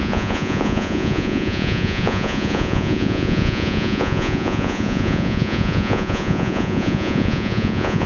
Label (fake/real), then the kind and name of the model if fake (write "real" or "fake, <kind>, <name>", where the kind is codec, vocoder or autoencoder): fake, vocoder, Vocos